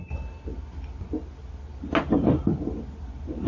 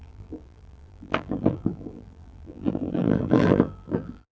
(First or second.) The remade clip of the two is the second